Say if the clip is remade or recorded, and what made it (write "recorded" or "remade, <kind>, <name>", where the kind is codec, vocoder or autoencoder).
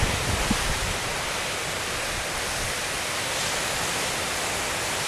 recorded